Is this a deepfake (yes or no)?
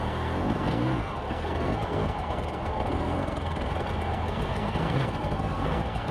yes